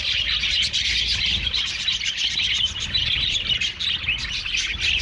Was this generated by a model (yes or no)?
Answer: no